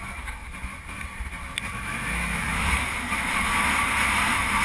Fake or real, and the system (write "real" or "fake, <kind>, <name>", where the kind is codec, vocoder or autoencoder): real